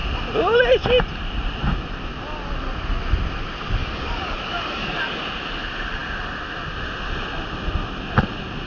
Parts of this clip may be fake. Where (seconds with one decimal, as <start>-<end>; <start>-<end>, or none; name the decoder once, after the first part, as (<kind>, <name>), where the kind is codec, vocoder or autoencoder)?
3.8-5.2 (codec, DAC)